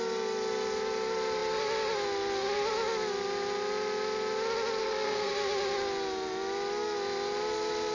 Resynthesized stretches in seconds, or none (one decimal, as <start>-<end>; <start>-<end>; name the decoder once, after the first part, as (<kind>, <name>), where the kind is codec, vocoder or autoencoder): 4.8-5.3 (codec, SNAC)